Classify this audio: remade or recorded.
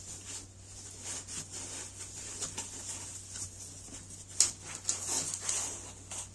recorded